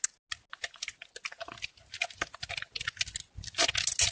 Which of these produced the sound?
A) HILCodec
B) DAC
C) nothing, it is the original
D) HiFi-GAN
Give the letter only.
C